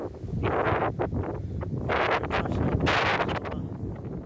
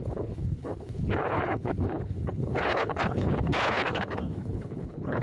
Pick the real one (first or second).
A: first